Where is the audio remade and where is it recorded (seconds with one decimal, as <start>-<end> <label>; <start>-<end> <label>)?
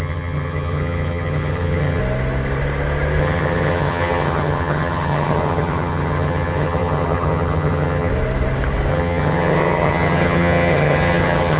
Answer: 0.0-2.0 remade; 2.0-3.2 recorded; 3.2-8.1 remade; 8.1-8.9 recorded; 8.9-11.6 remade